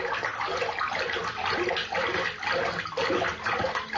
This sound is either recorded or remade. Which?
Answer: recorded